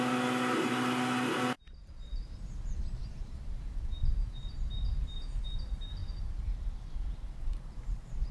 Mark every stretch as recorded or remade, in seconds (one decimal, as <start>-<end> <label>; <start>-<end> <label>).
0.0-8.3 recorded